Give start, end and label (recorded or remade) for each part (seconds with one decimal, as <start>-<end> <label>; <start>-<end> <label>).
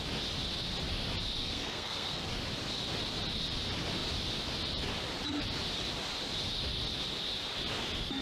0.0-1.4 recorded; 1.4-2.3 remade; 2.3-8.2 recorded